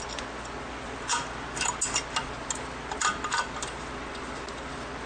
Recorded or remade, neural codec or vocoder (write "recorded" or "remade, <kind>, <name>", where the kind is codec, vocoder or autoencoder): recorded